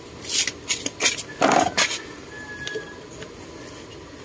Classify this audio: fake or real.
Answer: real